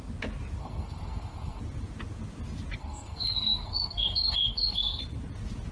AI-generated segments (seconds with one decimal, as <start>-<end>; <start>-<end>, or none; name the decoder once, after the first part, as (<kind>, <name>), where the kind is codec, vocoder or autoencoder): 0.6-1.6 (codec, SNAC); 2.8-5.0